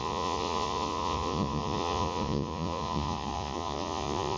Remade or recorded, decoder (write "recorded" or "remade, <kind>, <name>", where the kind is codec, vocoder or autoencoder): remade, vocoder, Vocos